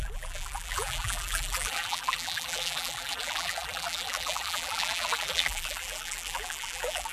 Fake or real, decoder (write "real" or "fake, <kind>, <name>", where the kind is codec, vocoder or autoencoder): fake, vocoder, BigVGAN v2